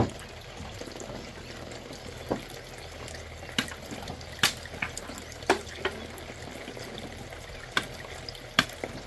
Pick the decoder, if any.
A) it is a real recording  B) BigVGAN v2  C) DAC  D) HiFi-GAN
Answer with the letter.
A